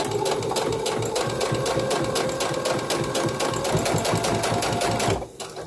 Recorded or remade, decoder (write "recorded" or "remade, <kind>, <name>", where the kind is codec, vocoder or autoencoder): recorded